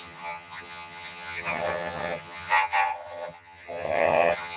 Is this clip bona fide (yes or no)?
no